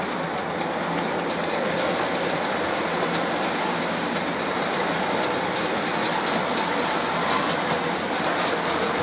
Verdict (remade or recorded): recorded